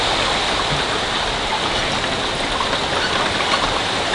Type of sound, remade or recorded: recorded